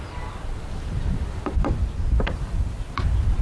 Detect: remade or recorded recorded